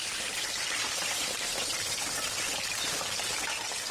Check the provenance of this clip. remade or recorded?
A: remade